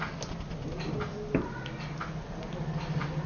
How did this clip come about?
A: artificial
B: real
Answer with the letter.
B